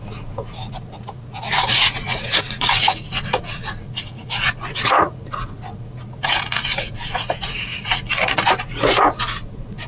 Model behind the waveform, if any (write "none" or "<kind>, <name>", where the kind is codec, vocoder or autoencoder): vocoder, Vocos